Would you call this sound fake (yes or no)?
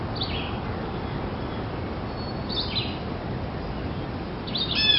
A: no